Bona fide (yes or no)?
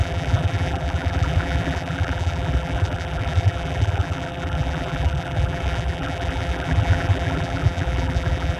no